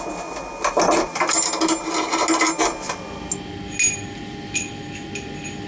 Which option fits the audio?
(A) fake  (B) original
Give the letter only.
B